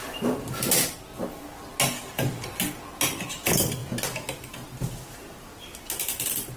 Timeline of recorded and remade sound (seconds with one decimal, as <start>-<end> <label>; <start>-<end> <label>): 0.0-0.6 remade; 0.6-6.6 recorded